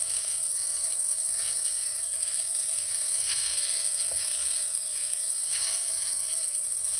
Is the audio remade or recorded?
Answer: remade